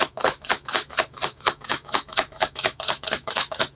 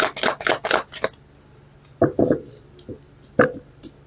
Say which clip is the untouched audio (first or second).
second